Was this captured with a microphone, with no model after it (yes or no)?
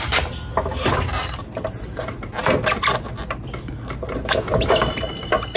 yes